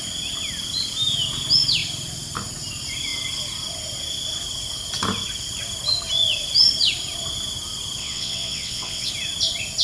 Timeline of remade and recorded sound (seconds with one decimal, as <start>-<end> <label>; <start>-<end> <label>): 0.0-8.0 recorded; 8.0-9.1 remade; 9.1-9.8 recorded